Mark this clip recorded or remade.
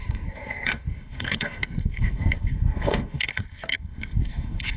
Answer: remade